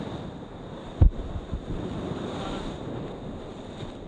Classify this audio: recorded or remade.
recorded